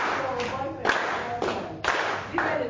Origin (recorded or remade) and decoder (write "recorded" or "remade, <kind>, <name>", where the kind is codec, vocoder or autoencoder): recorded